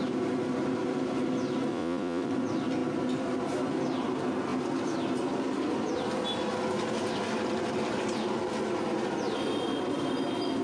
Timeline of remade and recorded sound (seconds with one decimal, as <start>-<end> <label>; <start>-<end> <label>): 0.0-1.7 recorded; 1.7-2.3 remade; 2.3-10.6 recorded